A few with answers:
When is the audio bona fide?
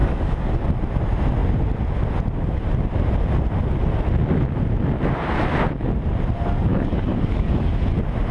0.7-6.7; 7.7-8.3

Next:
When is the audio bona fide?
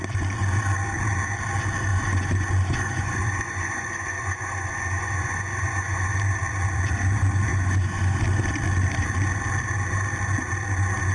0.0-1.9; 6.1-7.5; 8.2-11.1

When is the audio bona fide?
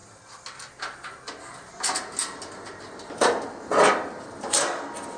0.0-5.2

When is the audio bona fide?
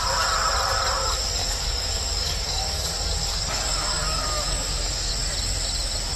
0.0-1.4; 5.1-6.2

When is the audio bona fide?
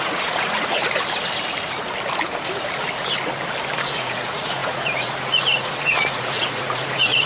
0.8-3.9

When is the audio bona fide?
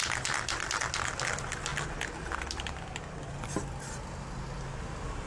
0.0-5.3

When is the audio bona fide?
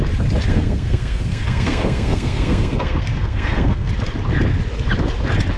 0.0-0.5; 3.9-5.6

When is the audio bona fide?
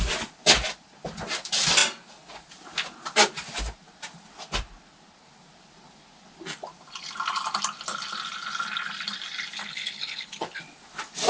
0.0-9.6; 10.6-11.3